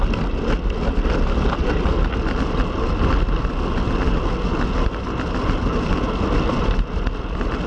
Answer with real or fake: real